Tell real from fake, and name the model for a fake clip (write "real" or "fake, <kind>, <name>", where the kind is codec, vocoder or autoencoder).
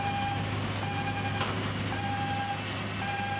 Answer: real